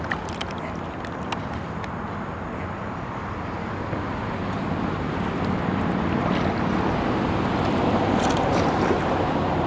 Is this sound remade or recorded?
recorded